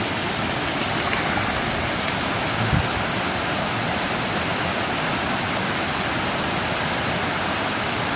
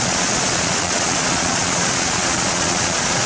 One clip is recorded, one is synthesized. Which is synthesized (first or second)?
second